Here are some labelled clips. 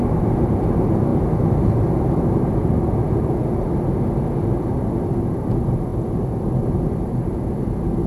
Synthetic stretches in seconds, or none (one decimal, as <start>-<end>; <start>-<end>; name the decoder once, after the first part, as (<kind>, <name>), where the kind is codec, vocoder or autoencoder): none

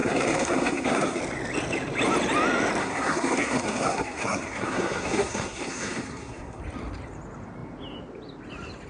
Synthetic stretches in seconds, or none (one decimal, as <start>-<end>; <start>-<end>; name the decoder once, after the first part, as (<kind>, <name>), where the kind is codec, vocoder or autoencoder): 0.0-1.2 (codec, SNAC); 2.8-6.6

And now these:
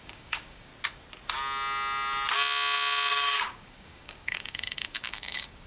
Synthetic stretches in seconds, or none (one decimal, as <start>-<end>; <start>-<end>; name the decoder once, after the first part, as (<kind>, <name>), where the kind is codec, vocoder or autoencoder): 0.0-0.7 (codec, DAC); 3.1-5.7

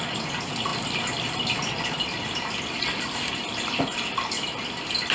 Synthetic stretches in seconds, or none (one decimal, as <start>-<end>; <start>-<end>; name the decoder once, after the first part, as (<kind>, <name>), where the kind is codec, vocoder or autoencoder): none

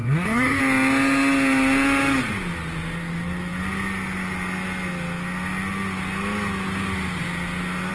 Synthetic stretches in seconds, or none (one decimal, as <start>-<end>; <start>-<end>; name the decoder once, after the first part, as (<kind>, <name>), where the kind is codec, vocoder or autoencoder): 0.0-0.6 (codec, SNAC)

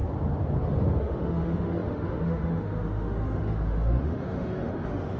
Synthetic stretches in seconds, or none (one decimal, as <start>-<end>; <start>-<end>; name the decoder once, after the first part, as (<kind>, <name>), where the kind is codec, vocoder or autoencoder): 1.0-5.2 (autoencoder, DAC-VAE)

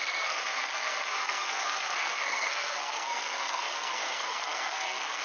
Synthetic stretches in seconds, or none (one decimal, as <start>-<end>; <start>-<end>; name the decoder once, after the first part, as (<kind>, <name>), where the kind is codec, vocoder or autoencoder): 0.0-5.2 (codec, SNAC)

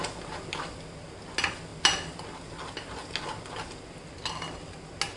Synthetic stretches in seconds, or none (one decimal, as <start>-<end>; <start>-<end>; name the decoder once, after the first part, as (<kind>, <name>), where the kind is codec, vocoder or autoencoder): none